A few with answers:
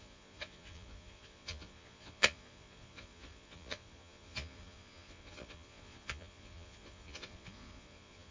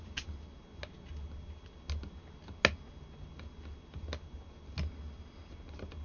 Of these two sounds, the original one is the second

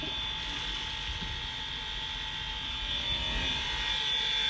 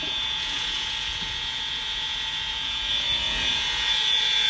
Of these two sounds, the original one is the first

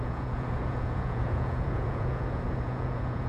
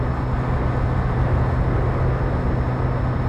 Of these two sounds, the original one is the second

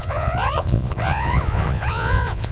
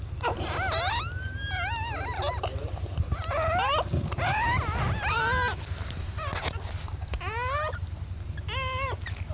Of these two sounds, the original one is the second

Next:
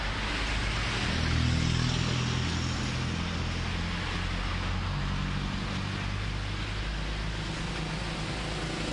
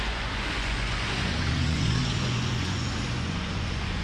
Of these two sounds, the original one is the first